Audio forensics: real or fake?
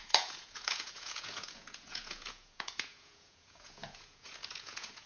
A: fake